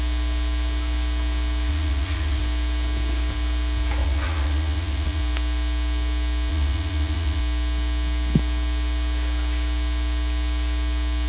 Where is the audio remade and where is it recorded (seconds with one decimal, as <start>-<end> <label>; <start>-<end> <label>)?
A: 0.0-1.7 recorded; 1.7-2.4 remade; 2.4-4.0 recorded; 4.0-5.2 remade; 5.2-6.5 recorded; 6.5-7.4 remade; 7.4-11.3 recorded